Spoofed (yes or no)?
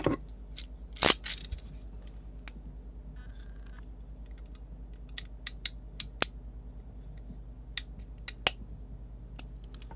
no